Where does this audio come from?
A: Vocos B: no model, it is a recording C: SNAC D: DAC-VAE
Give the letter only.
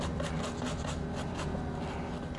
B